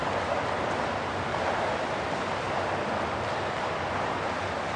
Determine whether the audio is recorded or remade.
recorded